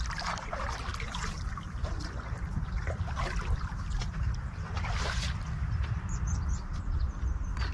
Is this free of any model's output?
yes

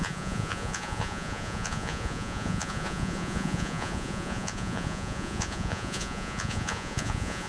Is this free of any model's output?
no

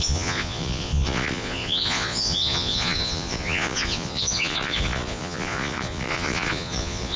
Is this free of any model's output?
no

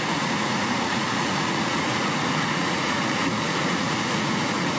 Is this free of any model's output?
no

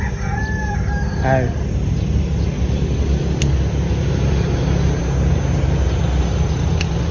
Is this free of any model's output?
yes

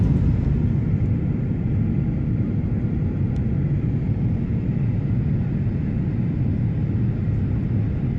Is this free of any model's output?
yes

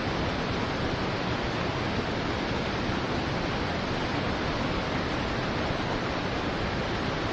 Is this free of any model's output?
yes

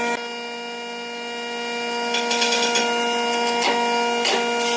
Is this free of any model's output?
yes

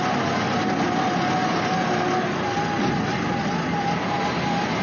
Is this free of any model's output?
yes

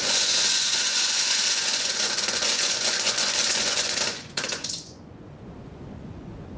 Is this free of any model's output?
no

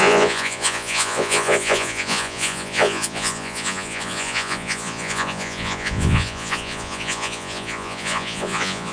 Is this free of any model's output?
no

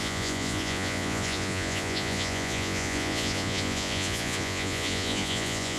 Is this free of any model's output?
no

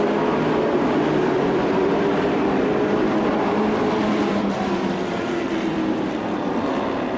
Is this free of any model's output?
yes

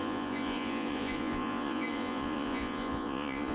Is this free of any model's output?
no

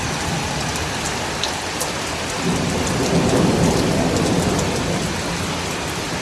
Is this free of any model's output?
yes